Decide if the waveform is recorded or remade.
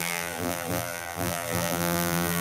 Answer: remade